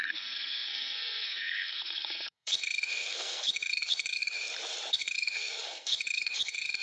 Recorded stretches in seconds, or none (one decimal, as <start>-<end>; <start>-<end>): 4.2-4.9